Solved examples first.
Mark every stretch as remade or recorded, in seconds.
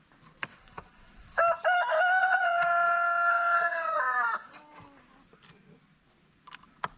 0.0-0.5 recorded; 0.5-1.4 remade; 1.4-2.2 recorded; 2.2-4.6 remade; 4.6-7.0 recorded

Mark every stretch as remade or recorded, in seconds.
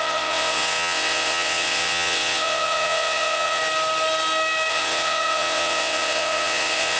0.0-3.6 remade; 3.6-4.7 recorded; 4.7-7.0 remade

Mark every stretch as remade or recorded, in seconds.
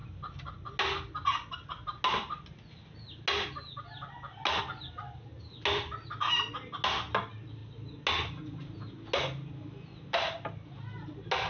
0.0-11.5 recorded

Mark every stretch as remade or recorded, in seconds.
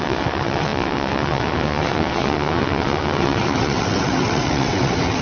0.0-5.2 remade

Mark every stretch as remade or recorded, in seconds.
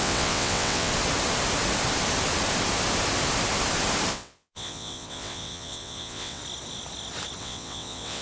0.0-0.9 remade; 0.9-4.1 recorded; 4.1-6.4 remade; 6.4-7.4 recorded; 7.4-8.2 remade